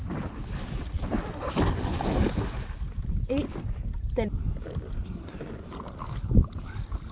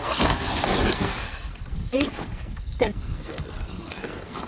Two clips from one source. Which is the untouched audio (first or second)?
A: first